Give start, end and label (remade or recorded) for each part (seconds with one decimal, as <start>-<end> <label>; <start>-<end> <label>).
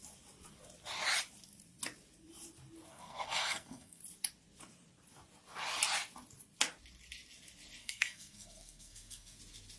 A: 0.0-2.9 recorded; 2.9-4.0 remade; 4.0-7.8 recorded; 7.8-9.4 remade; 9.4-9.8 recorded